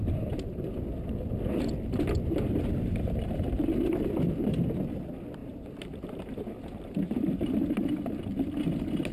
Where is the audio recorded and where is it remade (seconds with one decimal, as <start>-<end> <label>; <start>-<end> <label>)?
0.0-5.4 recorded; 5.4-6.5 remade; 6.5-9.1 recorded